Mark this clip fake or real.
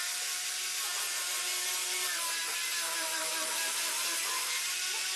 real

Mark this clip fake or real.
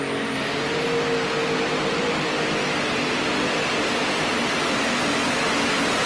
real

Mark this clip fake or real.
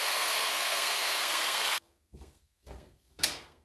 fake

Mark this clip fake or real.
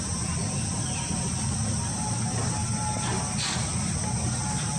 real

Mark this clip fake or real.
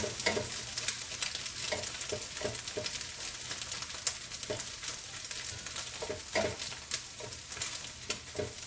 real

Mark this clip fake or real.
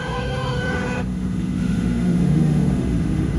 fake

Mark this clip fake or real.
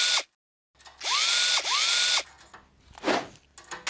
real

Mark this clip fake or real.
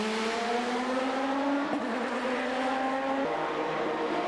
real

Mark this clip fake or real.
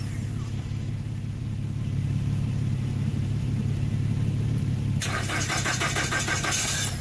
fake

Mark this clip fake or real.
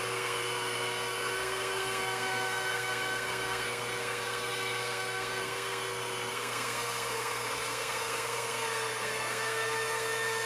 fake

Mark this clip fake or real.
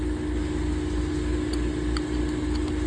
real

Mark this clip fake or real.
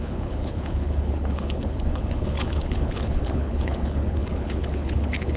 fake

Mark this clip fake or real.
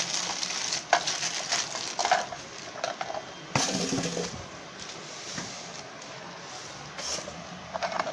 real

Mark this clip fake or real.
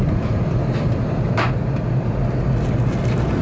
real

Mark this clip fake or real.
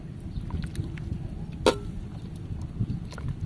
real